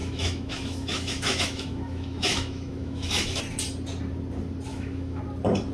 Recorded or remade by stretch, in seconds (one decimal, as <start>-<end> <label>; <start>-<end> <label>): 0.0-3.4 remade; 3.4-4.7 recorded; 4.7-5.2 remade; 5.2-5.7 recorded